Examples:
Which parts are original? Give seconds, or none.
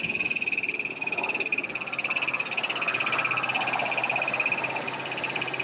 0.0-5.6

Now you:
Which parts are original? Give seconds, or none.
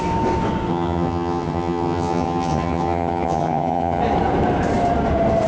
0.0-0.7; 4.0-5.5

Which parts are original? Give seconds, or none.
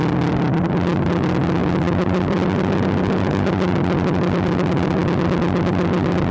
none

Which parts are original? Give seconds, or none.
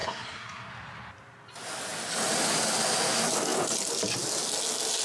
0.7-5.0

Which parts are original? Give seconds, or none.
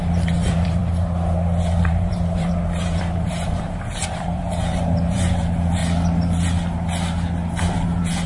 0.8-1.8; 5.8-7.6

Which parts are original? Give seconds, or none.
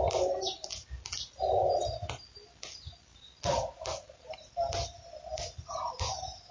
0.0-6.5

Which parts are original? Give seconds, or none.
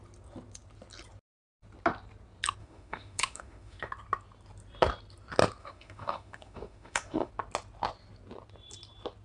0.0-2.6; 3.8-5.6; 7.3-9.2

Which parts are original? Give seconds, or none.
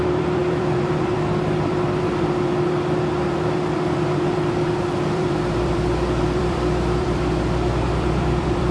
none